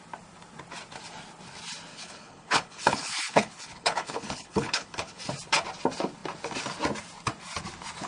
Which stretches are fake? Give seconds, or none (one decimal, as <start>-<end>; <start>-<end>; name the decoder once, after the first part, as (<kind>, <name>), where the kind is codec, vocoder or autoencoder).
1.9-5.2 (codec, HILCodec)